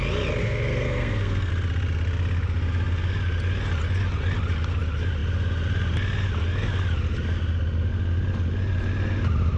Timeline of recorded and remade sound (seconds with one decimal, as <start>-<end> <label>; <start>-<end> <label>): 0.0-0.4 recorded; 0.4-1.5 remade; 1.5-9.6 recorded